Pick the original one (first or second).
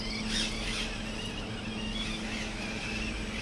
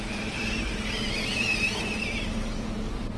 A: first